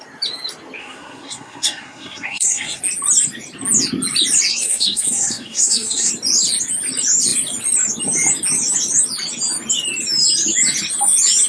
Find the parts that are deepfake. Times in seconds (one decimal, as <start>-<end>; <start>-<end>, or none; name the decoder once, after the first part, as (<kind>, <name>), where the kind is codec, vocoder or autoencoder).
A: 0.8-2.8 (codec, SNAC); 4.5-6.1